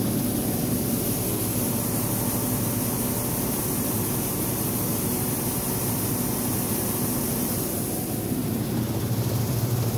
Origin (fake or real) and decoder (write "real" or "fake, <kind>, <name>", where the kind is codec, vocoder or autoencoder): real